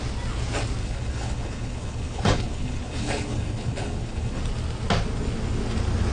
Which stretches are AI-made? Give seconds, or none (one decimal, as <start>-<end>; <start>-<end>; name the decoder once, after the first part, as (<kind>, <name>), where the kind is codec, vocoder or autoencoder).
0.8-4.4 (codec, HILCodec)